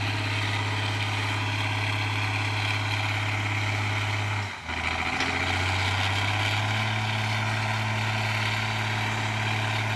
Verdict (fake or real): real